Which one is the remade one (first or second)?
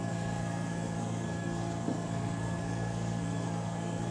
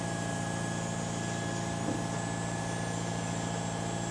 first